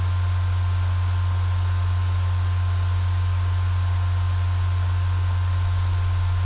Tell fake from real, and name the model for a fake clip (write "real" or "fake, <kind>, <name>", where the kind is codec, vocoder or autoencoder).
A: real